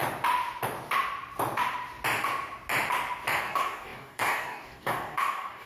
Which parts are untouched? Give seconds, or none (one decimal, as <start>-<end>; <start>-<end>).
0.0-3.4